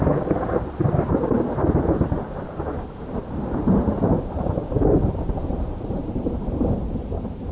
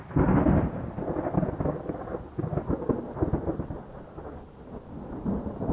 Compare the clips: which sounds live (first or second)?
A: second